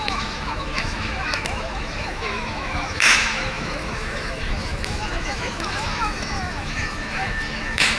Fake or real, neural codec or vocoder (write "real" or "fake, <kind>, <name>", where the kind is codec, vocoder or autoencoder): fake, autoencoder, DAC-VAE